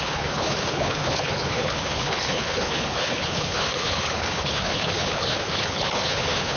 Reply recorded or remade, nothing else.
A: remade